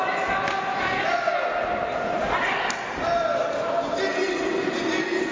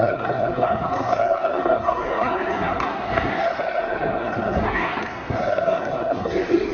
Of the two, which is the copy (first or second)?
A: second